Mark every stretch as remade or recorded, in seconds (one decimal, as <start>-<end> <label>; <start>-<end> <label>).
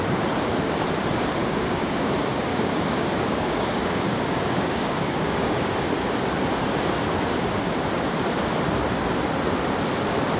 0.0-1.4 recorded; 1.4-2.1 remade; 2.1-2.5 recorded; 2.5-5.9 remade; 5.9-10.4 recorded